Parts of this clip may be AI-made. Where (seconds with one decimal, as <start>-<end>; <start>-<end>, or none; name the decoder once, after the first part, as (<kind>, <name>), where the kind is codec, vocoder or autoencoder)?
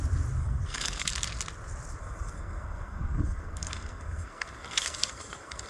0.4-1.1 (codec, SNAC); 2.0-5.7